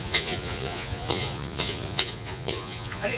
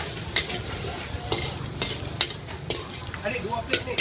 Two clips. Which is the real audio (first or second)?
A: second